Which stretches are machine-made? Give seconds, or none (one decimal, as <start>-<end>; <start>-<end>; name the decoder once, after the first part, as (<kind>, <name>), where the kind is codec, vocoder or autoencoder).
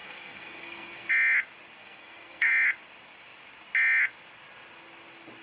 0.0-1.1 (codec, SNAC); 1.8-2.5